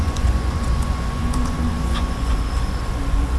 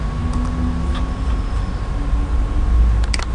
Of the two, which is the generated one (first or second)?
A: first